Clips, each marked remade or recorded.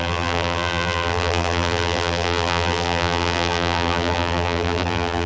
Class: remade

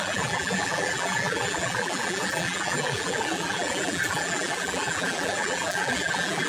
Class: remade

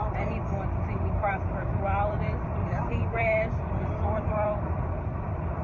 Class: remade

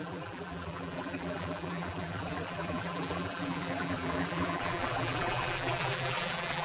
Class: remade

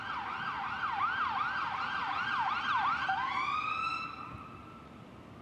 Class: recorded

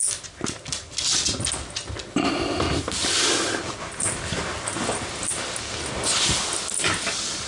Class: recorded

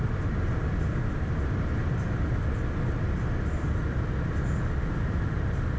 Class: recorded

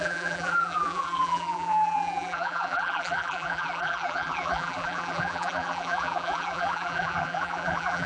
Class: remade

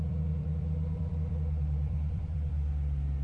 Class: remade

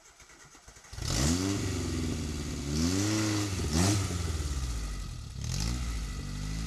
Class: recorded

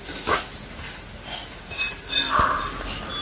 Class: recorded